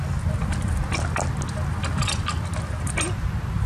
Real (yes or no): yes